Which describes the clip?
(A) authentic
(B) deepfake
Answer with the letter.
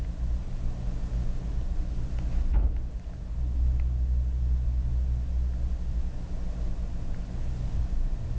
A